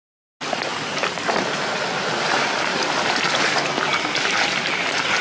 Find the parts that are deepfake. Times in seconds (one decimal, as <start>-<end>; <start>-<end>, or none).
none